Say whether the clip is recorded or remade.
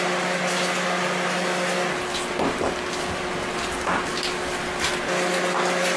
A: recorded